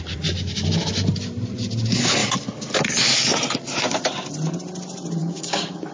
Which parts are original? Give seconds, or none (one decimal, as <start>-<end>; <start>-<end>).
0.0-5.2